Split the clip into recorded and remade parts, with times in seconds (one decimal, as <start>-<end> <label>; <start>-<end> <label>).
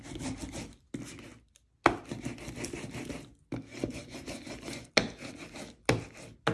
0.0-3.7 recorded; 3.7-4.9 remade; 4.9-6.5 recorded